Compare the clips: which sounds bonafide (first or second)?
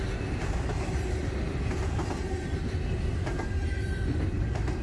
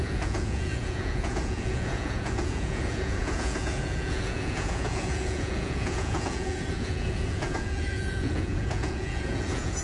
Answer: first